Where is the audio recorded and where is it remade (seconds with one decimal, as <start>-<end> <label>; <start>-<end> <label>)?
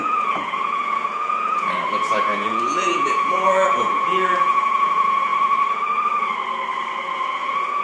0.0-5.3 remade; 5.3-7.0 recorded; 7.0-7.8 remade